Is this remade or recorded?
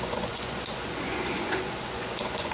remade